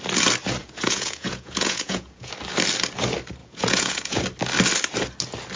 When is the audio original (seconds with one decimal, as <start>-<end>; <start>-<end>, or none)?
0.0-0.6; 2.3-3.4; 4.2-5.6